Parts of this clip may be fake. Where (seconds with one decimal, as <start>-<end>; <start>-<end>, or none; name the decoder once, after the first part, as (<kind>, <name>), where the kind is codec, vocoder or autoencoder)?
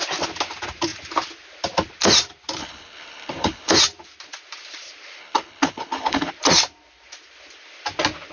2.6-3.7 (codec, HILCodec); 5.2-6.3